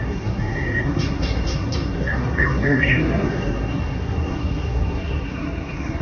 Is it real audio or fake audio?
fake